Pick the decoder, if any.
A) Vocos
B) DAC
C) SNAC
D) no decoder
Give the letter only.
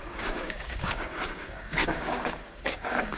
B